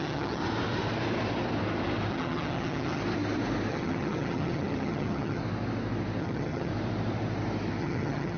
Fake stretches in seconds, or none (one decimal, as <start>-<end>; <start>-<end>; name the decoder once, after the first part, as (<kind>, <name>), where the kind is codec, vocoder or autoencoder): 0.0-0.4 (vocoder, HiFi-GAN); 2.1-3.0; 3.7-5.4; 6.2-6.7; 7.8-8.4